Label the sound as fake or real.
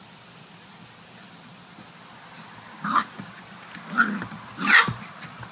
real